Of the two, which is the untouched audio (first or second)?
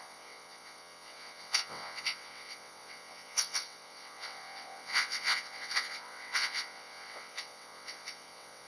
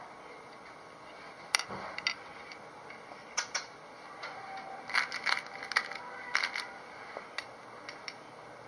second